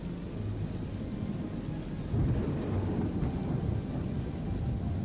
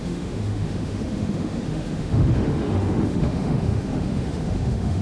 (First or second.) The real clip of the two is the first